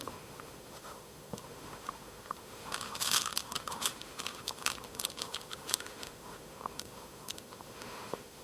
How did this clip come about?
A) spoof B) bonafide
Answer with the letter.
A